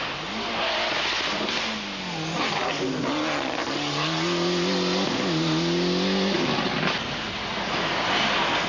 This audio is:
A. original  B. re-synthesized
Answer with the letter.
A